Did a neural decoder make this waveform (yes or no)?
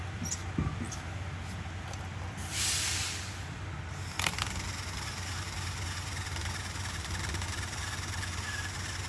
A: no